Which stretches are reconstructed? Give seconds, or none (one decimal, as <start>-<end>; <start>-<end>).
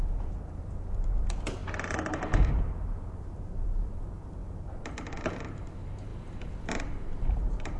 0.0-7.8